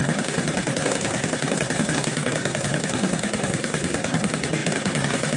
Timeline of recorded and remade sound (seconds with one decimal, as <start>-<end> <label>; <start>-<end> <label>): 0.0-5.4 remade